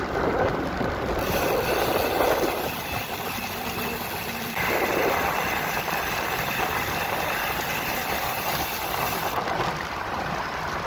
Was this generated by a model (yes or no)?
yes